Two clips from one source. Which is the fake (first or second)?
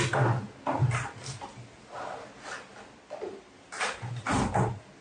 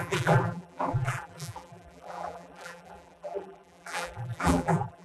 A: second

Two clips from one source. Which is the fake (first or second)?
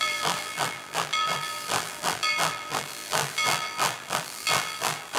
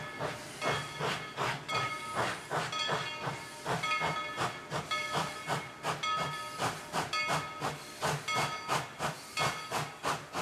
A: first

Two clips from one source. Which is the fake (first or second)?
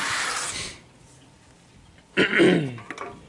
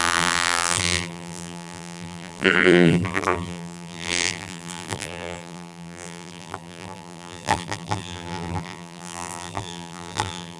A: second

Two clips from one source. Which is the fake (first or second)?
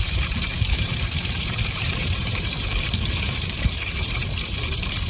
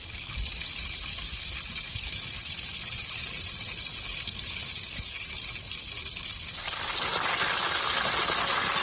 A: first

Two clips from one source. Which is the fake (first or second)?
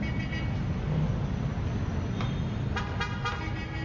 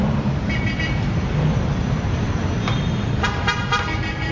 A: second